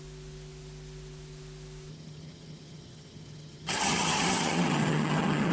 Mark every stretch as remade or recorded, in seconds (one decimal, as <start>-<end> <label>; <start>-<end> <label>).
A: 0.0-1.9 recorded; 1.9-5.5 remade